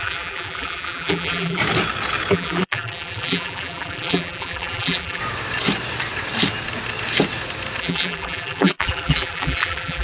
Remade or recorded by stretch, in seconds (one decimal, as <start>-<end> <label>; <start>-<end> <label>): 0.0-1.6 remade; 1.6-2.3 recorded; 2.3-5.2 remade; 5.2-7.8 recorded; 7.8-10.0 remade